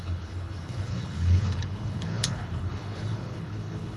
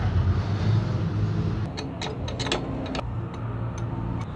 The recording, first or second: second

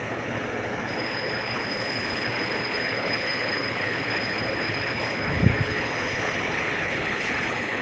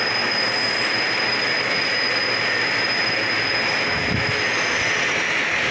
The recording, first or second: second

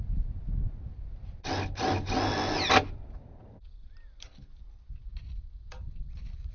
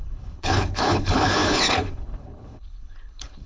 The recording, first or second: first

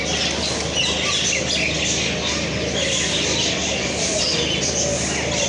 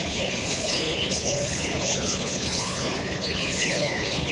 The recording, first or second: first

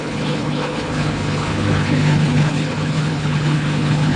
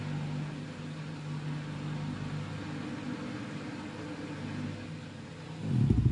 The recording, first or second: second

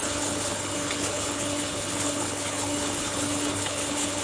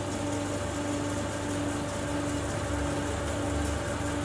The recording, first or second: second